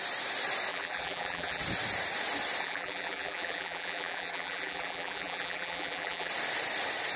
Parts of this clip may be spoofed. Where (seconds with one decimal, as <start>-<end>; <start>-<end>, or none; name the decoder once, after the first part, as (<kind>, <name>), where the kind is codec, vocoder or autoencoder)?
0.7-1.6 (vocoder, BigVGAN v2); 2.6-6.3